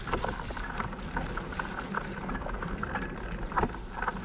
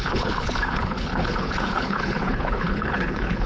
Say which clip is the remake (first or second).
second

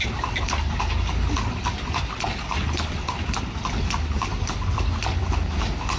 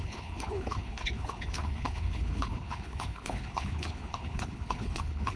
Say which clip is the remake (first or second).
second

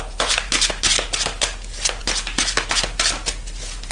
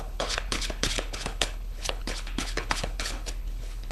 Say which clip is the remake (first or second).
second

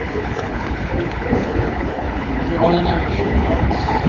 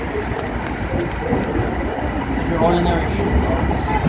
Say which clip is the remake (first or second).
first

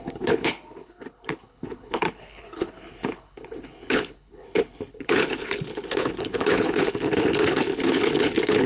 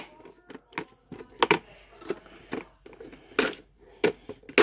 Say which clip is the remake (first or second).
first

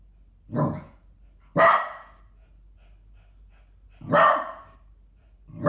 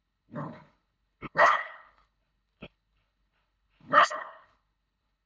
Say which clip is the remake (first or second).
second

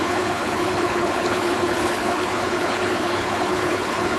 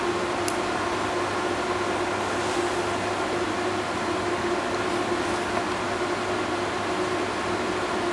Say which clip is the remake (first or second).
first